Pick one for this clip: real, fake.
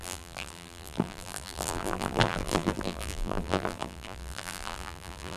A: fake